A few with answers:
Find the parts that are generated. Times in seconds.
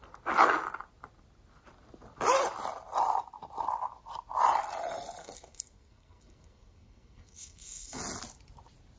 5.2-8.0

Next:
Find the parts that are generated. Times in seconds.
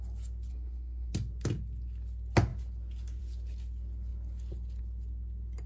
0.5-1.1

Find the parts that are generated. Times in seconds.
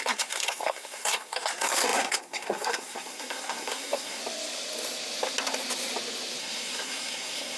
0.0-4.2; 6.4-7.6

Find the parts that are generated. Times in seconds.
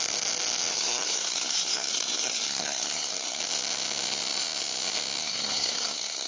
0.7-3.4; 5.2-6.3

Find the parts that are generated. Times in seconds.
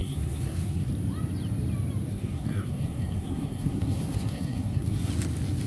0.0-0.9; 2.1-5.1